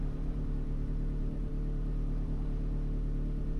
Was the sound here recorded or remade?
remade